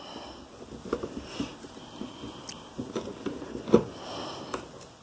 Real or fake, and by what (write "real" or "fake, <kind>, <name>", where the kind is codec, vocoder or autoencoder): real